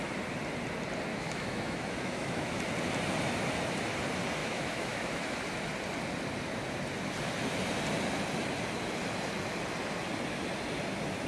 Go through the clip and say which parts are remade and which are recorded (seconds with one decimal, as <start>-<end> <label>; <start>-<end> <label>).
0.0-1.1 recorded; 1.1-2.6 remade; 2.6-4.4 recorded; 4.4-5.4 remade; 5.4-11.3 recorded